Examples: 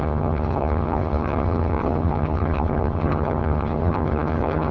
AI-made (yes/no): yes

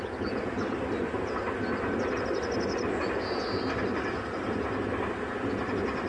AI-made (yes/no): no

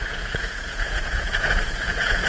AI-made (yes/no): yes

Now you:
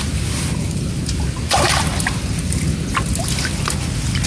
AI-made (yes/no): no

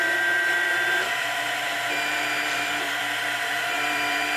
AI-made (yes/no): yes